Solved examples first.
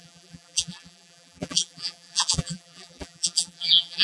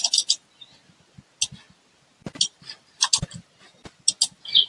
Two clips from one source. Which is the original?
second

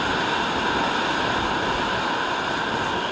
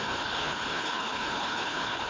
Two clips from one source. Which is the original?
first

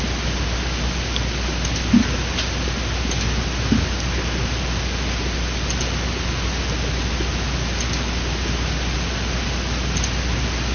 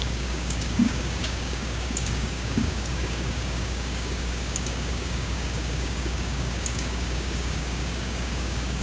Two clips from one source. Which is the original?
first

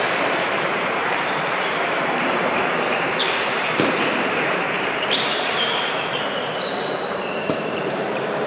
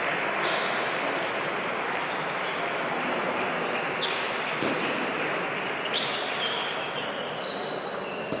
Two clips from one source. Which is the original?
second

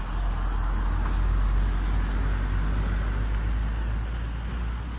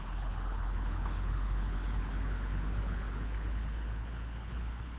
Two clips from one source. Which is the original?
first